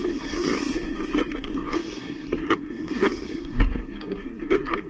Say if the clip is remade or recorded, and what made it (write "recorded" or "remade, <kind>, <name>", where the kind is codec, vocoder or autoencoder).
remade, codec, SNAC